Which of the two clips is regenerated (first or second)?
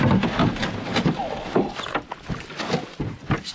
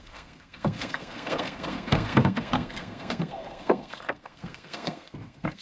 second